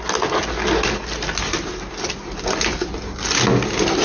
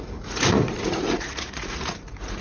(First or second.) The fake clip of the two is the second